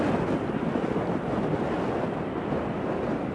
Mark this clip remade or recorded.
recorded